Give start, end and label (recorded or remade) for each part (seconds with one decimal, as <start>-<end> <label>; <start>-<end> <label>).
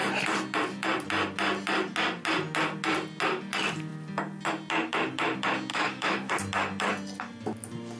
0.0-5.7 recorded; 5.7-6.3 remade; 6.3-8.0 recorded